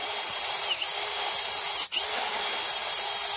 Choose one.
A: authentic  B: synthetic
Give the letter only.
A